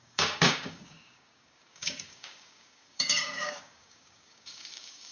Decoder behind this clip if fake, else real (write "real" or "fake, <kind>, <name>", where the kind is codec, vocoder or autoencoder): fake, codec, DAC